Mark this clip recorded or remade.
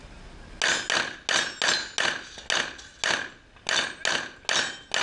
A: recorded